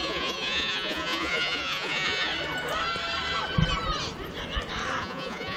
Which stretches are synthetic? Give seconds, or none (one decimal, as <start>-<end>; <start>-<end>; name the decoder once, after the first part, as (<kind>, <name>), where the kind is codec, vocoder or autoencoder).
0.0-2.3 (vocoder, Vocos); 5.0-5.6